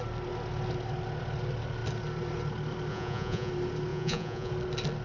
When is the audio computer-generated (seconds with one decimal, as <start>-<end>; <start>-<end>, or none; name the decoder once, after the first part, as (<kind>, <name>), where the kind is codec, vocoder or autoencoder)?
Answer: 2.9-3.5 (vocoder, Vocos); 3.9-4.5